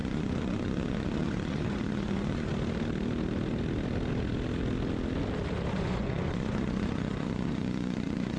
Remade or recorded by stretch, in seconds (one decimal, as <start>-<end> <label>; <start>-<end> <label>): 0.0-2.5 remade; 2.5-5.7 recorded; 5.7-8.4 remade